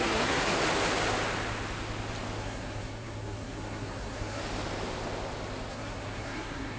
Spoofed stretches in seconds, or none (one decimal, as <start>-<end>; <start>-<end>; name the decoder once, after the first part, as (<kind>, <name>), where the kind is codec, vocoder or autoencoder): 0.0-0.5 (codec, SNAC); 2.4-4.4; 5.7-6.8